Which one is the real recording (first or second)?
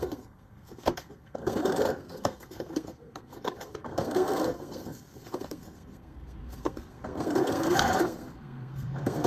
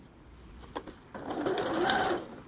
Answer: second